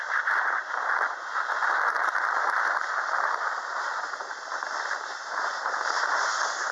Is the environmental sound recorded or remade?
remade